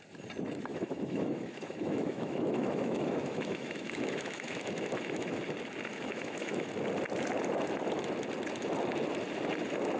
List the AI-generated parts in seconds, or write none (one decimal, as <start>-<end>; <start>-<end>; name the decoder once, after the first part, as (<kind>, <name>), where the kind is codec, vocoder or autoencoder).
0.7-5.4 (autoencoder, DAC-VAE); 5.9-6.7